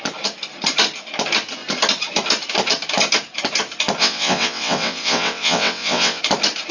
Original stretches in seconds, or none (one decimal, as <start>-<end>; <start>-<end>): 0.0-4.0; 6.2-6.7